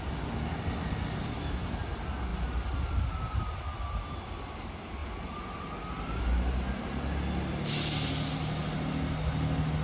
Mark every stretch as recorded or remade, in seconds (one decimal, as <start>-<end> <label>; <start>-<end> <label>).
0.0-9.8 recorded